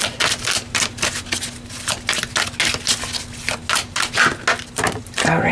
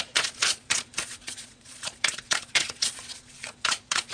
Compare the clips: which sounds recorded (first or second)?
first